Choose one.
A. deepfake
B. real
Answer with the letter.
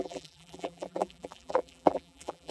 A